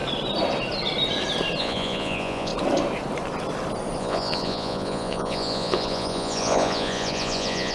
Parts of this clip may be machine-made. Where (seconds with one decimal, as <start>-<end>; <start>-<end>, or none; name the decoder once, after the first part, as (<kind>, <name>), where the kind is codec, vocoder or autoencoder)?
1.6-2.5 (vocoder, Vocos); 4.0-7.7